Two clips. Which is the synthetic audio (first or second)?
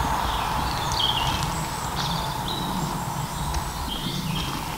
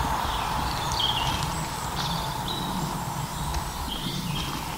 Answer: second